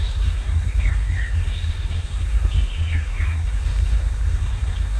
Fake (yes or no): yes